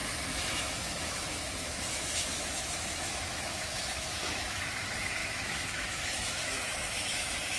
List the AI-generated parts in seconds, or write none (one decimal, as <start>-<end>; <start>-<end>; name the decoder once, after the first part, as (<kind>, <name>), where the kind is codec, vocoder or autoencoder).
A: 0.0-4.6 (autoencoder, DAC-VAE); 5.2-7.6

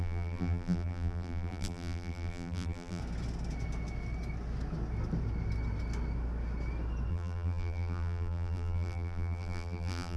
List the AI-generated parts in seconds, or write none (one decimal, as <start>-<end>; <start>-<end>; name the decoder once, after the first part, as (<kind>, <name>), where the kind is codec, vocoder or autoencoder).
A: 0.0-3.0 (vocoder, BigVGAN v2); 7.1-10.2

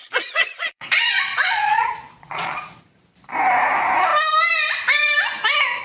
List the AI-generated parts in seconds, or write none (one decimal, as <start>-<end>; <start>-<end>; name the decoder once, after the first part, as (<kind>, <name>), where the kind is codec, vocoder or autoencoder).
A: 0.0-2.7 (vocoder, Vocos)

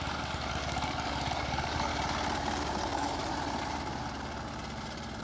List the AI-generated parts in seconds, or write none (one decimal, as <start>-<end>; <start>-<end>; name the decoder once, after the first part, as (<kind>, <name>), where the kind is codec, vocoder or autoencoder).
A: 0.0-1.9 (codec, DAC); 2.8-3.2